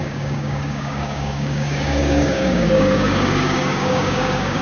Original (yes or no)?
no